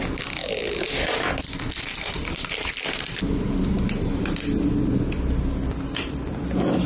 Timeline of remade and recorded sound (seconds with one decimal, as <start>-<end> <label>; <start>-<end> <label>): 0.0-0.6 recorded; 0.6-4.7 remade; 4.7-6.9 recorded